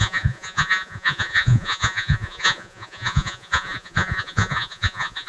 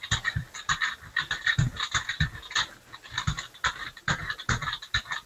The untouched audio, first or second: second